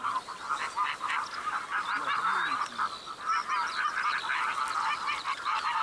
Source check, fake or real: real